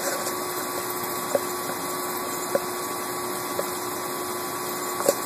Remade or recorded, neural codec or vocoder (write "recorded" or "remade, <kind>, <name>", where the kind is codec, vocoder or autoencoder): recorded